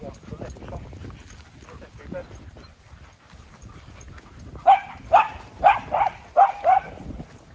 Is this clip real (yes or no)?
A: yes